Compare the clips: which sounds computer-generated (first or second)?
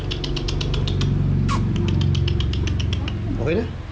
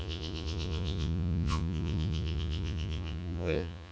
second